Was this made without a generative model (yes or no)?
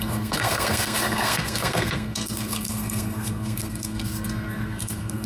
no